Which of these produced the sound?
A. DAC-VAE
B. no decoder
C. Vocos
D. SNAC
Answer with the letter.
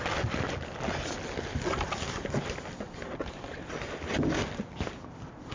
B